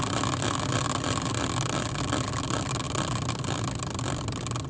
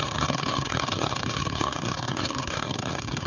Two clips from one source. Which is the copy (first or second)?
second